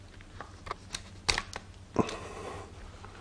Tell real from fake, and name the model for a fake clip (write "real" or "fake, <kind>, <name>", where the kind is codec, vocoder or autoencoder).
real